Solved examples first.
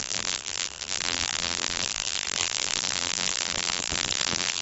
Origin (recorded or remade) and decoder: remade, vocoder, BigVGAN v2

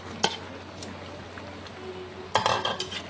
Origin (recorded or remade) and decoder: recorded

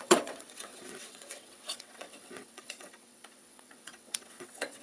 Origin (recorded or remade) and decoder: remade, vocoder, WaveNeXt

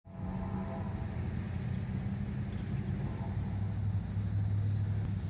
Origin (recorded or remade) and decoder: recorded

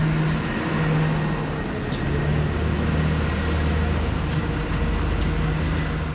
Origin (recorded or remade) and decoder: recorded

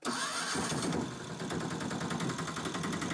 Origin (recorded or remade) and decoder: recorded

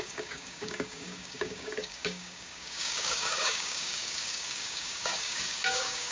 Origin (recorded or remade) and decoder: remade, codec, DAC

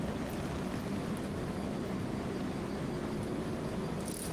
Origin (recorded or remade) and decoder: recorded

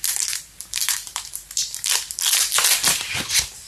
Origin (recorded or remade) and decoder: remade, vocoder, BigVGAN v2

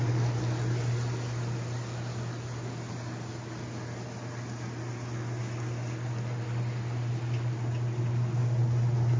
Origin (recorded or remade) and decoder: recorded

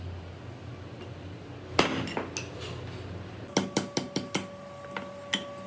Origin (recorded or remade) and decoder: recorded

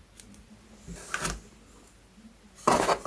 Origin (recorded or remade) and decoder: recorded